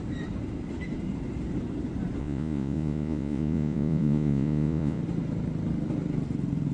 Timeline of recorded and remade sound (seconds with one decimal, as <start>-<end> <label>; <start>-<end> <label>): 0.0-2.2 recorded; 2.2-5.0 remade; 5.0-6.7 recorded